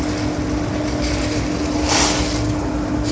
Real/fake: real